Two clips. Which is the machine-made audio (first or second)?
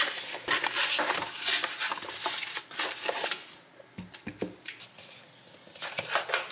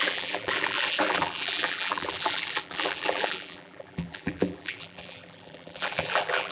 second